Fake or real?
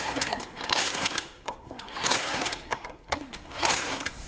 fake